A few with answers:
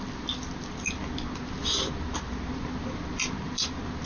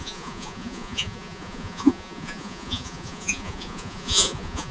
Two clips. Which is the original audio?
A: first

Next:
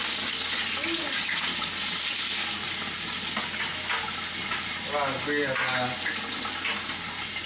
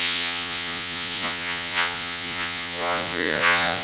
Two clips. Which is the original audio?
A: first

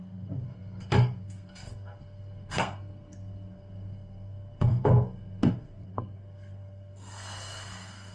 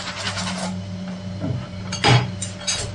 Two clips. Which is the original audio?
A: second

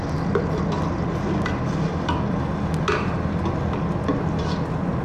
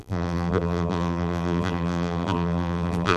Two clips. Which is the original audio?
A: first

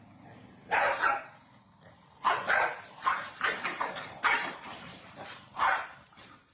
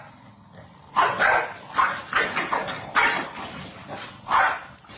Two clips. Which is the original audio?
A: second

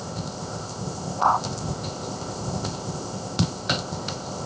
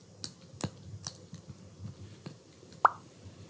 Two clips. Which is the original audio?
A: second